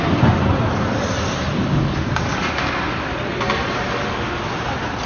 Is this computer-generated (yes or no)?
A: no